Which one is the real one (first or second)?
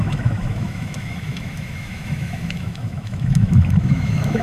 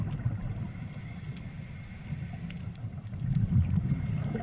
second